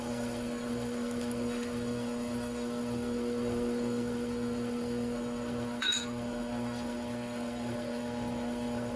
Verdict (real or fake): fake